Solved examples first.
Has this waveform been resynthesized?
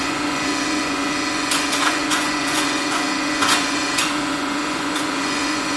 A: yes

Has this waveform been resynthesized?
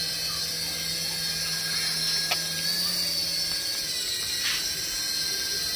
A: no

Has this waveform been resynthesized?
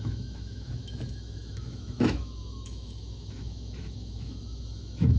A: yes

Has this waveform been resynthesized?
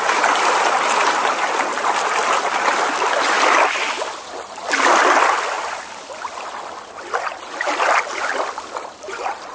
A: no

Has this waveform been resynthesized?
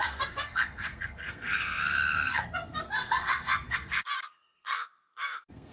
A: yes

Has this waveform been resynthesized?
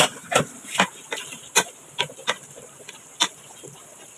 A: no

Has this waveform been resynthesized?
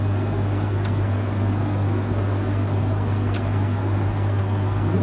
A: yes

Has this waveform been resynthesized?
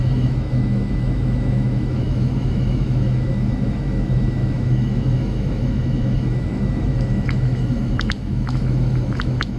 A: yes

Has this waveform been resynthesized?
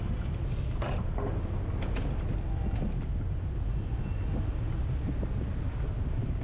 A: no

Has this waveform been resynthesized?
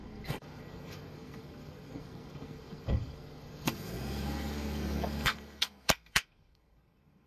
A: yes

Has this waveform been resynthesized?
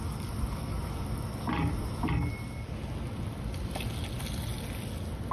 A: no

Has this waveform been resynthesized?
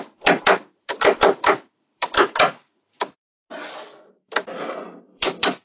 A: yes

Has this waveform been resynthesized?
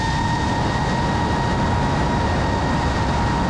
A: no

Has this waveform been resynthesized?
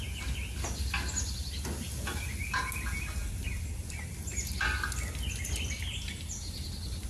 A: no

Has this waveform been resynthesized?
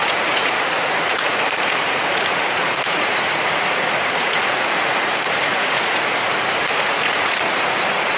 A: yes